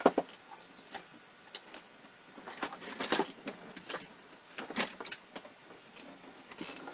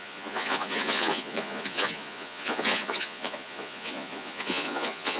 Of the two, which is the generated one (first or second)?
second